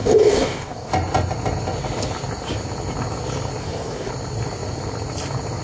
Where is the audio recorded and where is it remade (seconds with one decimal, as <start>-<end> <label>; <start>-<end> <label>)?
0.0-0.9 remade; 0.9-3.6 recorded; 3.6-4.1 remade; 4.1-5.6 recorded